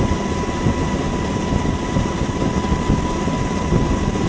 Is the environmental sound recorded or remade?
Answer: recorded